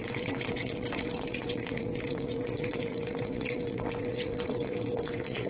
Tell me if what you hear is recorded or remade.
remade